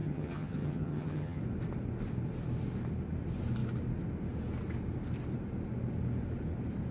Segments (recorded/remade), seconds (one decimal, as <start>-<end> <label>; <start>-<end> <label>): 0.0-1.4 remade; 1.4-6.9 recorded